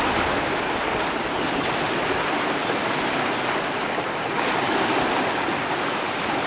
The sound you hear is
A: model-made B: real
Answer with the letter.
B